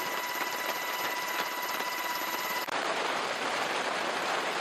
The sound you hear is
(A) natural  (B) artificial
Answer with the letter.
B